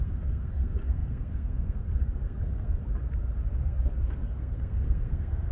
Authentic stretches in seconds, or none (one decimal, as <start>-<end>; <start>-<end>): 2.8-3.5